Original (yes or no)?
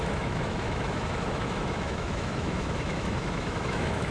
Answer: no